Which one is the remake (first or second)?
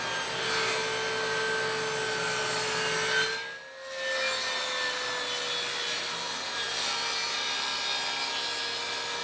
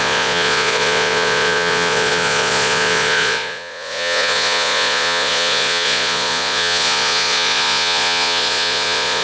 second